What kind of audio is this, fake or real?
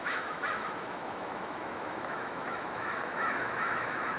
fake